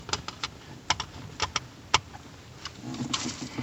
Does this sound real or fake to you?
real